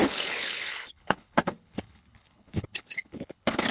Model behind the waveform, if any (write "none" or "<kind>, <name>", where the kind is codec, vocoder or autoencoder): codec, HILCodec